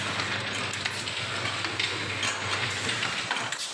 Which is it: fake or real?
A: real